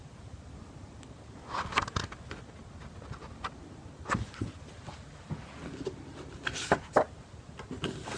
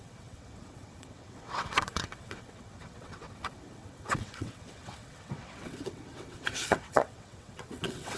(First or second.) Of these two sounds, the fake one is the second